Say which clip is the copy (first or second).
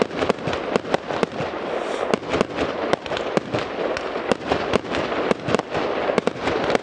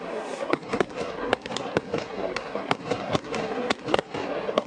second